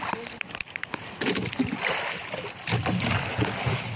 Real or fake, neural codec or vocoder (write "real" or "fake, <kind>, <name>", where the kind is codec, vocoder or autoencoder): real